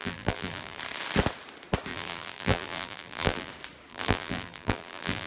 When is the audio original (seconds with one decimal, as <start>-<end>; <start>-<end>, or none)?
0.8-1.9; 3.5-3.9

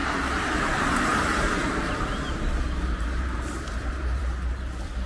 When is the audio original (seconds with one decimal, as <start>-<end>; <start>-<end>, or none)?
0.6-1.1; 4.2-5.1

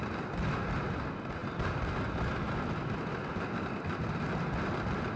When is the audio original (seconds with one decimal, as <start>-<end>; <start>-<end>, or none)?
0.0-5.2